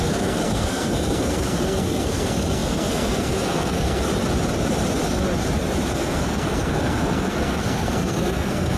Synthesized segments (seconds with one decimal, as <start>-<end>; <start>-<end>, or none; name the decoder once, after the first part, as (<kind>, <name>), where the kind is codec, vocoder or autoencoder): 0.0-4.1 (codec, SNAC); 5.9-8.8